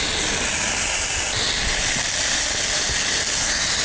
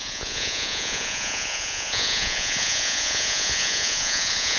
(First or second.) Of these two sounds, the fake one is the second